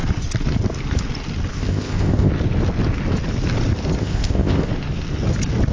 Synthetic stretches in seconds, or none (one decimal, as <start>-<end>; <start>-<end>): 1.5-2.3; 4.0-4.7